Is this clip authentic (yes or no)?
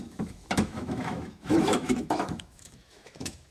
no